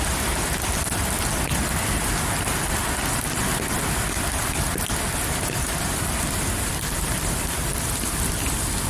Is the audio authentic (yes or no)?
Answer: yes